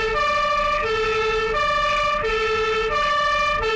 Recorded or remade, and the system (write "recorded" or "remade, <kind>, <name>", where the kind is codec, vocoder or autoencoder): recorded